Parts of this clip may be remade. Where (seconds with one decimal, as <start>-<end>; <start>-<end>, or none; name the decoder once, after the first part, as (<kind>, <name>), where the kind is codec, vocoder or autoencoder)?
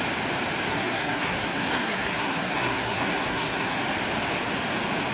0.7-3.8 (codec, SNAC)